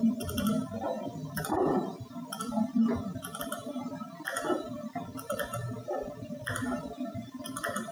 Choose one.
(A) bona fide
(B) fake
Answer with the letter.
B